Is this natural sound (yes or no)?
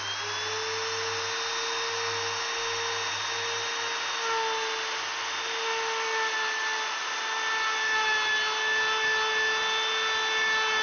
yes